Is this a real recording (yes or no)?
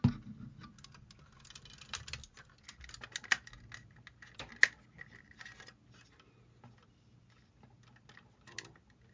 yes